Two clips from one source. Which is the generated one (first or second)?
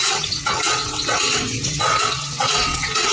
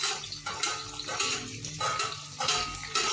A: first